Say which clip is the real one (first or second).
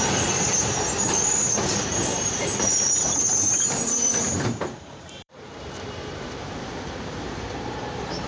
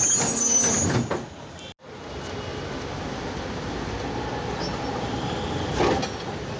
second